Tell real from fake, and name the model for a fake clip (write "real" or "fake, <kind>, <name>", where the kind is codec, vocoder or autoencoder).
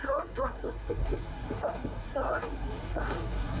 fake, codec, SNAC